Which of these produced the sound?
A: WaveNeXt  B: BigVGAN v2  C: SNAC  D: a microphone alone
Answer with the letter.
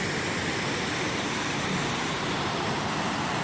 D